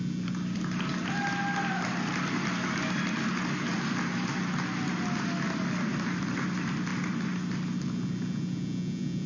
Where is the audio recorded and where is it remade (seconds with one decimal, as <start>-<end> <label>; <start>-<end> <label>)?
0.0-9.3 recorded

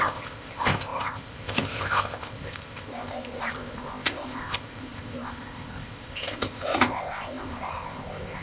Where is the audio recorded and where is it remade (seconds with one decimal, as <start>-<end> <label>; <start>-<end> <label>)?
0.0-8.4 remade

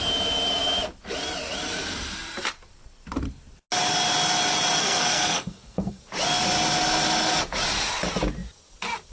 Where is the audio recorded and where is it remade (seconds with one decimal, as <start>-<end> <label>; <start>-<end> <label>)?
0.0-4.8 recorded; 4.8-6.0 remade; 6.0-9.1 recorded

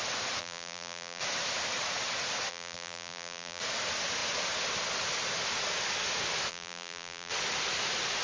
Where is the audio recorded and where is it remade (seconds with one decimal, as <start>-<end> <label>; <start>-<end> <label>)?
0.0-0.4 recorded; 0.4-1.2 remade; 1.2-2.5 recorded; 2.5-3.6 remade; 3.6-6.5 recorded; 6.5-7.3 remade; 7.3-8.2 recorded

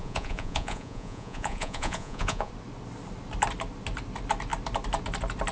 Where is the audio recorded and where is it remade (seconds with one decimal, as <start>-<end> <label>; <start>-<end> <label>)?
0.0-2.5 remade; 2.5-5.5 recorded

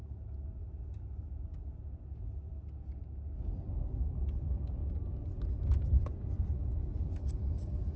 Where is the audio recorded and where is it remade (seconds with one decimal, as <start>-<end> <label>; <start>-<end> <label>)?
0.0-4.8 recorded; 4.8-6.5 remade; 6.5-8.0 recorded

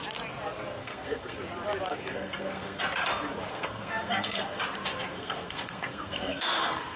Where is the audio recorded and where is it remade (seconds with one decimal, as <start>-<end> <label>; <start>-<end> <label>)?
0.0-0.8 recorded; 0.8-1.4 remade; 1.4-1.9 recorded; 1.9-2.8 remade; 2.8-3.5 recorded; 3.5-4.6 remade; 4.6-5.1 recorded; 5.1-7.0 remade